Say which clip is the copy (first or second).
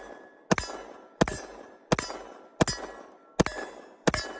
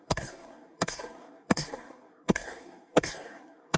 second